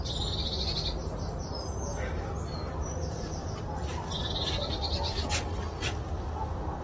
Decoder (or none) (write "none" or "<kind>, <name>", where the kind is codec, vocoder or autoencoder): none